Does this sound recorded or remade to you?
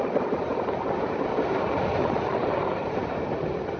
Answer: recorded